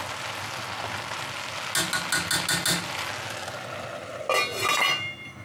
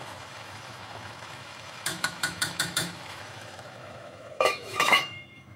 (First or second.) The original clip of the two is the first